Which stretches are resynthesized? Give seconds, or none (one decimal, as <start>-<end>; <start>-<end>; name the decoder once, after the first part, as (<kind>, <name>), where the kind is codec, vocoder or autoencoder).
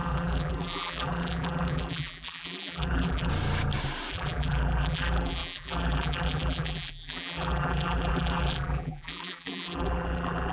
0.0-3.3 (vocoder, BigVGAN v2); 4.1-10.5